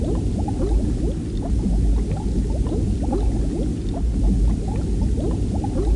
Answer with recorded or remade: recorded